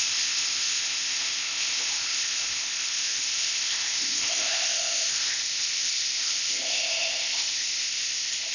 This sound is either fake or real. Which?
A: fake